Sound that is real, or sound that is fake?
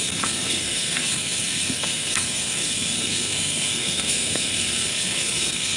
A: fake